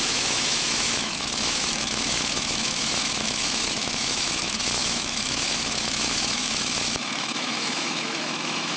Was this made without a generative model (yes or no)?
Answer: no